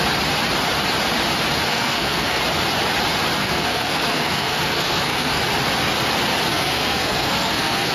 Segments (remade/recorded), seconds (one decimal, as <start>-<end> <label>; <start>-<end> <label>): 0.0-1.7 recorded; 1.7-2.4 remade; 2.4-3.4 recorded; 3.4-5.4 remade; 5.4-6.5 recorded; 6.5-7.9 remade